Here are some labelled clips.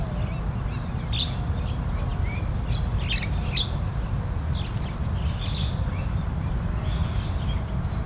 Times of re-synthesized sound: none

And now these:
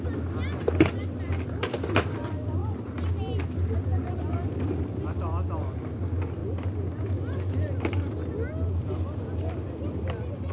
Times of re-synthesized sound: none

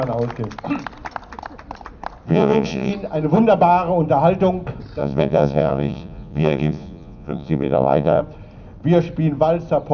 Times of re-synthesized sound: 2.3-2.9 (vocoder, Vocos); 5.0-8.2

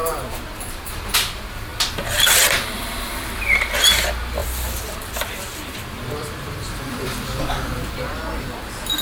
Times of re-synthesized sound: 0.0-0.6 (vocoder, BigVGAN v2); 1.7-3.8; 4.4-9.0

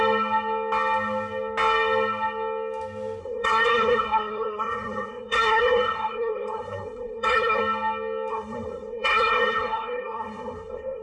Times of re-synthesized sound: 3.2-7.6 (codec, SNAC); 8.3-11.0